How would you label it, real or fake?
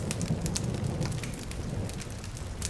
real